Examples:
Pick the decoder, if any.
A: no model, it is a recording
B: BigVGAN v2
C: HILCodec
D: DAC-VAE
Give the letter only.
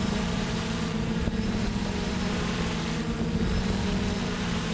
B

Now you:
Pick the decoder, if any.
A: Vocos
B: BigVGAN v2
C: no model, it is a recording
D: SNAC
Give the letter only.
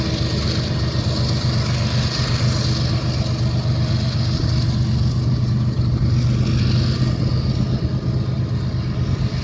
C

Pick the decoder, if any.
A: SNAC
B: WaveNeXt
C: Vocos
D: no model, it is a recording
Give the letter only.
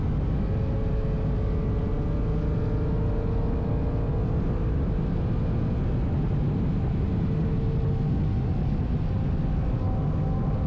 D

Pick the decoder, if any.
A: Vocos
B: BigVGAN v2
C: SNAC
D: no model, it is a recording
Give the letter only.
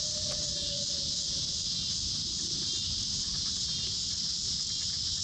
D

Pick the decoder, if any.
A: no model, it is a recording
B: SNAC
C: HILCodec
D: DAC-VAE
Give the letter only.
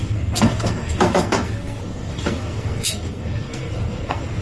B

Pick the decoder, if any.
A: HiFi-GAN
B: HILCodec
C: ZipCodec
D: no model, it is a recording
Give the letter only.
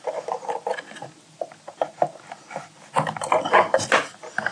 D